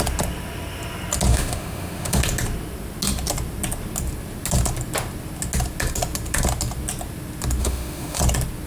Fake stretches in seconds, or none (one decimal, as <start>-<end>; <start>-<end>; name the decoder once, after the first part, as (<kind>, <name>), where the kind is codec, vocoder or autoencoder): 1.3-2.2 (autoencoder, DAC-VAE); 7.6-8.2